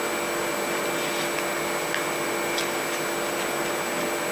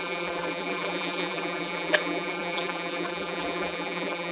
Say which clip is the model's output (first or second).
second